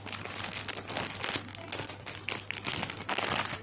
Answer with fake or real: real